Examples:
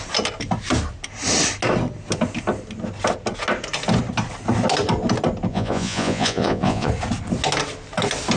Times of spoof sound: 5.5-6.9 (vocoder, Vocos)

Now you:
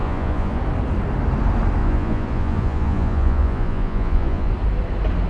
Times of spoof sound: 0.0-0.6 (vocoder, Vocos); 1.8-4.5

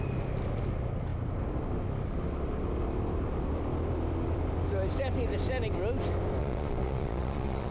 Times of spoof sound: 6.4-7.7 (vocoder, Vocos)

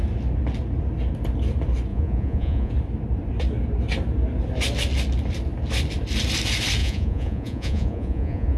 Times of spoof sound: 1.9-2.7 (vocoder, Vocos); 6.8-8.6